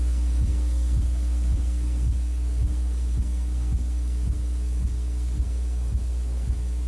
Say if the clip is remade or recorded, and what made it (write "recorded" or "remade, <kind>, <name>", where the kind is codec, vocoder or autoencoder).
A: remade, codec, SNAC